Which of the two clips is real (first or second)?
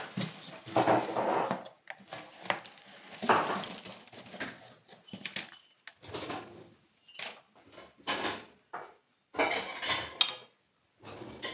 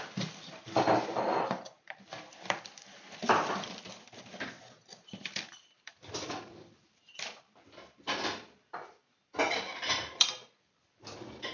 first